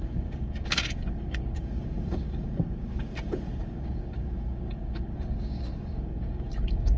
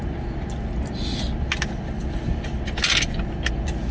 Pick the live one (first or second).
second